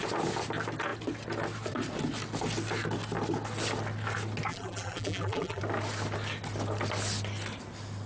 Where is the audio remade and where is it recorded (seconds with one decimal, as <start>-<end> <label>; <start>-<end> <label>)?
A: 0.0-4.5 recorded; 4.5-5.6 remade; 5.6-8.1 recorded